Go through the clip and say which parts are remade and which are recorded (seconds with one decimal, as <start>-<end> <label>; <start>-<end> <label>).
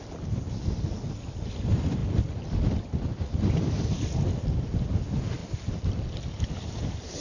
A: 0.0-5.4 recorded; 5.4-6.8 remade; 6.8-7.2 recorded